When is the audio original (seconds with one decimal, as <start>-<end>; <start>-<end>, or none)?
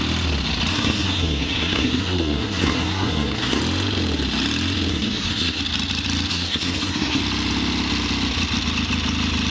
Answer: 0.0-0.7; 3.6-4.9; 5.6-6.3; 7.2-9.5